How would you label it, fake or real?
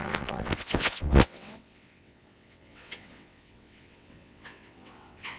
fake